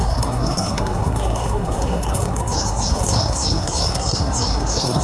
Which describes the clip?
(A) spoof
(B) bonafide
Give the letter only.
A